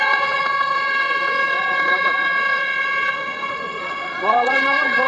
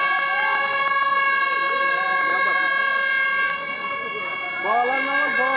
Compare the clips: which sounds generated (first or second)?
first